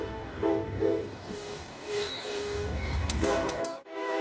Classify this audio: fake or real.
fake